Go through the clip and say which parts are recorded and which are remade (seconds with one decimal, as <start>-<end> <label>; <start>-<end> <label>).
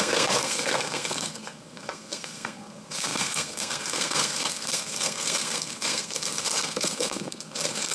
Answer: 0.0-7.9 remade